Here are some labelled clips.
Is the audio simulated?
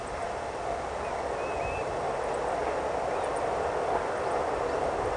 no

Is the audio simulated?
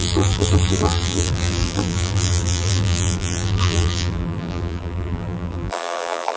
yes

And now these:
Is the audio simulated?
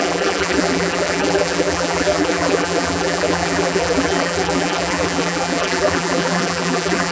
yes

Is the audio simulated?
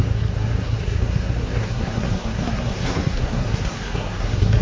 yes